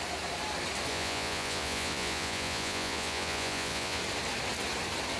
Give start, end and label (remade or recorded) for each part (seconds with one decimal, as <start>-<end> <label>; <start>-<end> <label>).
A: 0.0-0.9 recorded; 0.9-4.0 remade; 4.0-5.2 recorded